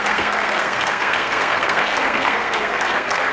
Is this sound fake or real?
fake